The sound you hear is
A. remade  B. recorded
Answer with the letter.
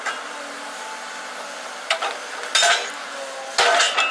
B